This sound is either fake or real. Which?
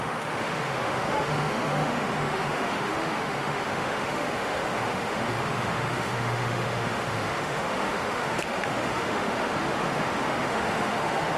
fake